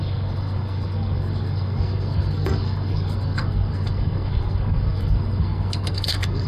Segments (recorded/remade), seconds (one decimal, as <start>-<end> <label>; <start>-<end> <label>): 0.0-6.5 remade